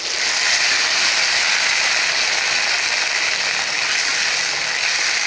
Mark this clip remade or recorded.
recorded